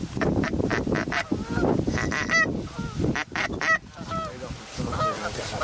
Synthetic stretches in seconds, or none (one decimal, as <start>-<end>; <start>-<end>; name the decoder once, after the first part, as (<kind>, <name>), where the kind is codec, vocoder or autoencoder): none